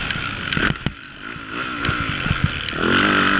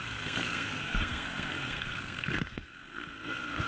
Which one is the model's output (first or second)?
second